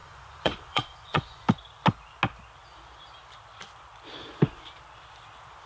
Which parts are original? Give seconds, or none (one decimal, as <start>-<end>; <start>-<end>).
1.5-5.7